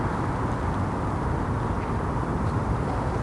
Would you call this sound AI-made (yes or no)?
no